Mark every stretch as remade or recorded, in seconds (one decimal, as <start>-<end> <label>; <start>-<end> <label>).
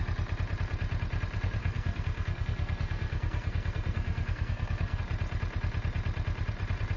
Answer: 0.0-1.6 recorded; 1.6-5.0 remade; 5.0-7.0 recorded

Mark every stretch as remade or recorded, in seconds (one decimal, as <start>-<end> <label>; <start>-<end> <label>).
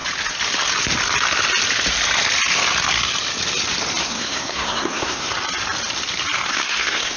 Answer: 0.0-4.0 recorded; 4.0-5.3 remade; 5.3-6.5 recorded; 6.5-7.2 remade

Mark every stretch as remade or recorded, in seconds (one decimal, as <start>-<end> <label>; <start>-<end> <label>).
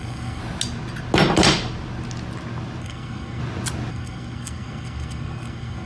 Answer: 0.0-0.4 remade; 0.4-2.8 recorded; 2.8-3.4 remade; 3.4-3.9 recorded; 3.9-5.9 remade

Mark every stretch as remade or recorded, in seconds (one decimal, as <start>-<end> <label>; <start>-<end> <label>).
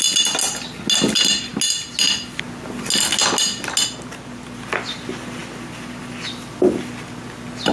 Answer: 0.0-7.7 recorded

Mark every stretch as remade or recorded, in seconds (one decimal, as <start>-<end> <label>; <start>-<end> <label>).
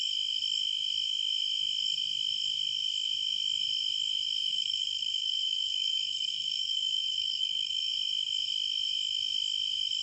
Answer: 0.0-4.5 recorded; 4.5-7.9 remade; 7.9-10.0 recorded